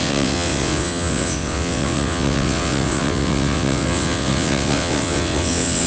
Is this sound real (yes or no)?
no